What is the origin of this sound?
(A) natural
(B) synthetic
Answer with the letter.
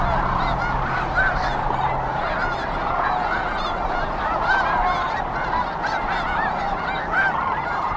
A